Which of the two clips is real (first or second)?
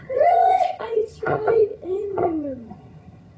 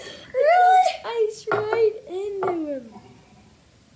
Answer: second